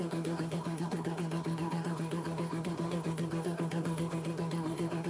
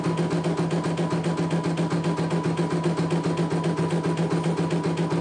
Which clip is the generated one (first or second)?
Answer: first